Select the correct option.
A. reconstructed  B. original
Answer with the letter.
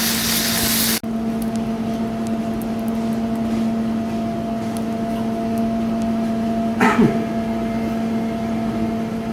B